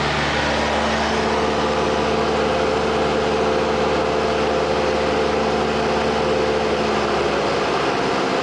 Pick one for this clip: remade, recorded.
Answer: recorded